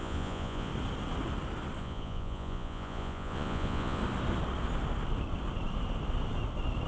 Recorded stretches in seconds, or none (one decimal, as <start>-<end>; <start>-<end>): 0.7-1.8; 4.0-6.9